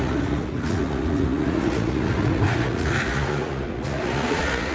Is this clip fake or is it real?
fake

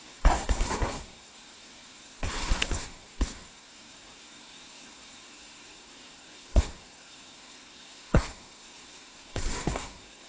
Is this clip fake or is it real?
fake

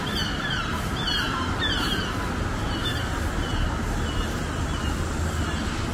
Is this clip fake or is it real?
real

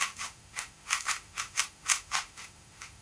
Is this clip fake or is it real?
fake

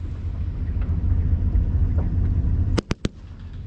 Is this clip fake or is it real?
fake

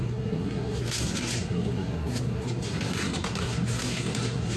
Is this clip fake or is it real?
fake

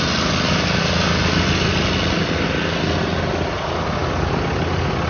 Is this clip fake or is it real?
real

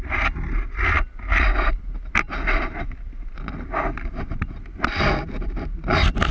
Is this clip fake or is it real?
real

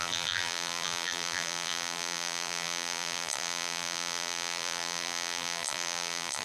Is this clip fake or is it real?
fake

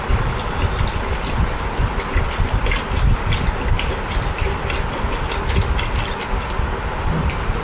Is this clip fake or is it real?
real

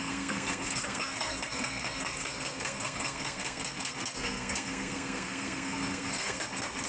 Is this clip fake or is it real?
fake